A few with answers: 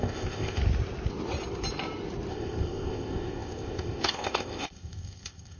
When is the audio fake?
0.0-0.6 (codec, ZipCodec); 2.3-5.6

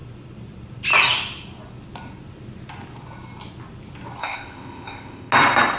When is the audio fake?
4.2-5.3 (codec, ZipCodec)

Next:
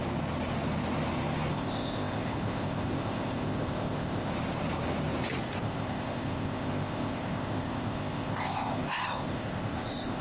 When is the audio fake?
1.5-4.3 (codec, ZipCodec); 5.4-10.2

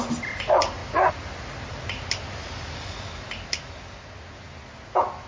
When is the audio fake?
none

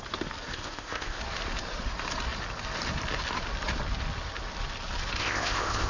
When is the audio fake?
0.5-1.2 (codec, ZipCodec); 5.2-5.9

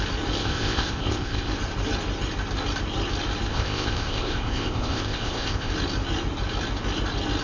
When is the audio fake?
0.4-1.5 (codec, ZipCodec); 3.5-5.7